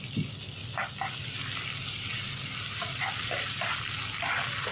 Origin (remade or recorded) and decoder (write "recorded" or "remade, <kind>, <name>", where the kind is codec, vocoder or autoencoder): recorded